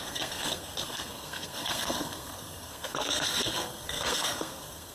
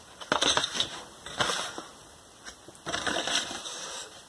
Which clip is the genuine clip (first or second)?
second